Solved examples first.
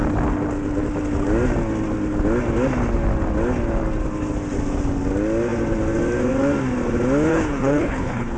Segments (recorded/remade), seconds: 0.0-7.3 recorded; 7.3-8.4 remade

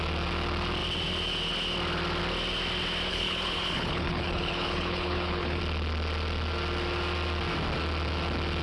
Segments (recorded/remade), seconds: 0.0-3.1 recorded; 3.1-5.6 remade; 5.6-8.6 recorded

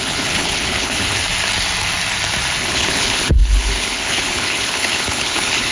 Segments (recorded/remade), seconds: 0.0-1.2 remade; 1.2-2.6 recorded; 2.6-5.7 remade

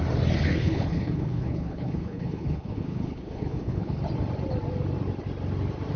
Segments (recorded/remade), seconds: 0.0-0.4 recorded; 0.4-4.0 remade; 4.0-6.0 recorded

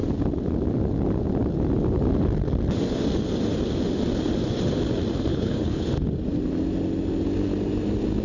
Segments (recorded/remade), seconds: 0.0-5.3 recorded; 5.3-5.9 remade; 5.9-8.2 recorded

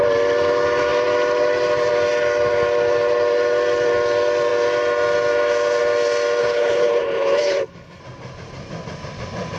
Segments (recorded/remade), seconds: 0.0-6.4 recorded; 6.4-8.0 remade; 8.0-9.6 recorded